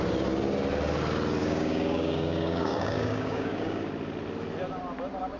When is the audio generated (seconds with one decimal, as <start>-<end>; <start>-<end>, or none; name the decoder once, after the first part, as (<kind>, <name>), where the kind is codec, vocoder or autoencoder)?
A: 1.4-3.9 (codec, DAC)